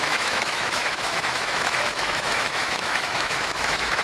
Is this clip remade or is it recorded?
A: remade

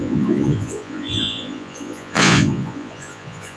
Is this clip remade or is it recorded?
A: remade